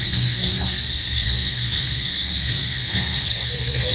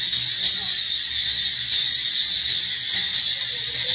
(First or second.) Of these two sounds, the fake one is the first